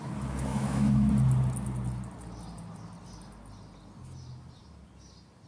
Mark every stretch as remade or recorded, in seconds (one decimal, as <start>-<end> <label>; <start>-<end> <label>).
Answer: 0.0-0.5 recorded; 0.5-1.1 remade; 1.1-5.5 recorded